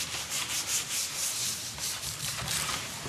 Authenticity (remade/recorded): remade